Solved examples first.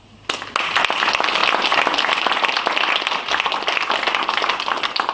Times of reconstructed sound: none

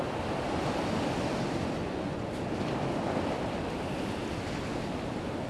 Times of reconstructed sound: 1.8-2.3 (vocoder, Vocos)

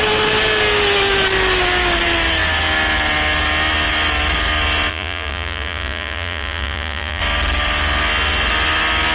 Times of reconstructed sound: 4.9-7.2 (vocoder, Vocos)

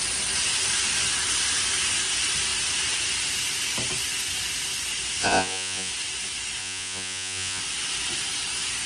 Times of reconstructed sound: 5.2-5.9 (vocoder, Vocos); 6.6-7.6

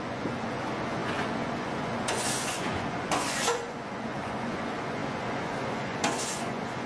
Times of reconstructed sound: 0.0-6.9 (vocoder, Vocos)